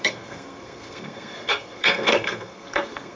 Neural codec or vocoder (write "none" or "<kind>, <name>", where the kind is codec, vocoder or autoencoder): codec, SNAC